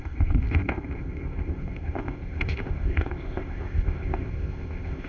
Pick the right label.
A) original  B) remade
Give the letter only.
B